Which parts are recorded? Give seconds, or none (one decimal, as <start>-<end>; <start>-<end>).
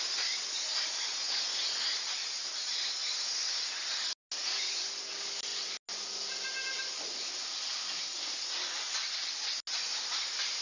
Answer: 0.0-10.6